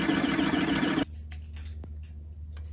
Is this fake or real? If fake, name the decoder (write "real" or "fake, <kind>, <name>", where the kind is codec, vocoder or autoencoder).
real